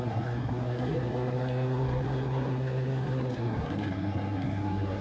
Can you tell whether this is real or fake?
fake